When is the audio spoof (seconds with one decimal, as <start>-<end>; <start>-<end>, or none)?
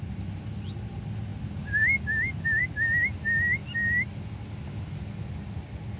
none